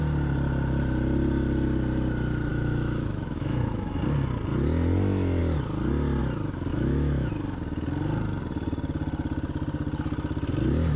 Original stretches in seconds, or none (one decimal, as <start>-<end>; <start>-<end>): 0.0-2.5; 4.0-6.7; 7.3-11.0